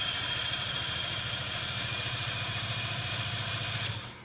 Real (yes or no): no